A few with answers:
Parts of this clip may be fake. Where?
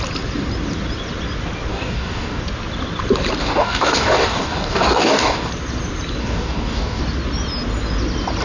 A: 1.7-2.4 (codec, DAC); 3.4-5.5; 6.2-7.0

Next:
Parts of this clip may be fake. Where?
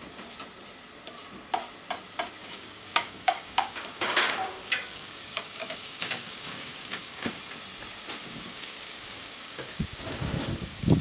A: 2.4-7.4 (codec, DAC); 8.2-11.0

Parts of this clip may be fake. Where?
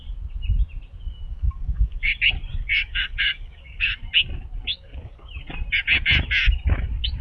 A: 1.3-2.1 (codec, DAC); 2.5-3.9; 4.7-5.3